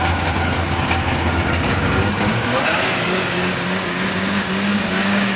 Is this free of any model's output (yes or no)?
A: no